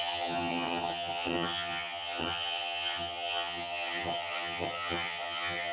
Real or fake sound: fake